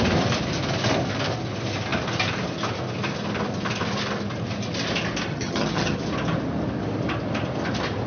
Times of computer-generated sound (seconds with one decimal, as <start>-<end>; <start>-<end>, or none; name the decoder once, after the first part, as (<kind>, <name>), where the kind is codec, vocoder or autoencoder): 5.3-6.0 (vocoder, HiFi-GAN)